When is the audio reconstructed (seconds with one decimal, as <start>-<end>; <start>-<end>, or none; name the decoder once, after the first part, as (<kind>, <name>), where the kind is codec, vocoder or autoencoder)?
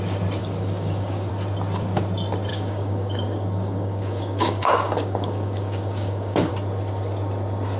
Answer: 0.4-1.3 (codec, DAC); 2.5-6.5